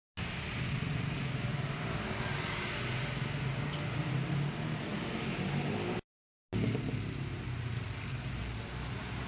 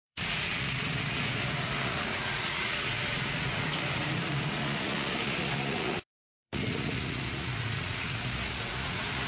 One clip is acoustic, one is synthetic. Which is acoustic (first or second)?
first